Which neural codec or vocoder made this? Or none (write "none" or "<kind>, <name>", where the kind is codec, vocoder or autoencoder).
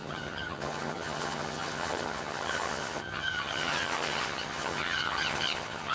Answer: vocoder, HiFi-GAN